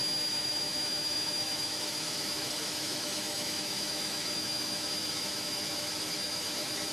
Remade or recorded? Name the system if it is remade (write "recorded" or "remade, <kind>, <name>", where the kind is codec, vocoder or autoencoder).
remade, autoencoder, DAC-VAE